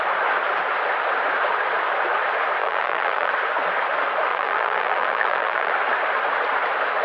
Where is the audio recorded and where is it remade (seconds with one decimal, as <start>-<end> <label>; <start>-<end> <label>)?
0.0-2.6 recorded; 2.6-3.3 remade; 3.3-4.3 recorded; 4.3-5.7 remade; 5.7-7.0 recorded